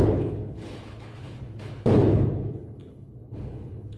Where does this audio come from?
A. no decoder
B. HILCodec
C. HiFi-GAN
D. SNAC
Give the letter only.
B